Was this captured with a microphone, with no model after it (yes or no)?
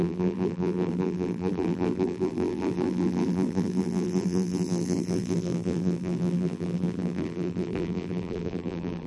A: no